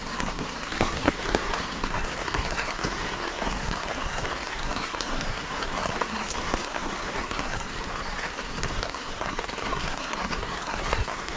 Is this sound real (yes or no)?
no